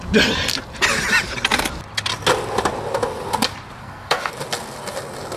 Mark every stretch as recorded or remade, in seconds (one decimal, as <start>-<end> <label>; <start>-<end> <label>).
0.0-3.8 recorded; 3.8-4.3 remade; 4.3-5.4 recorded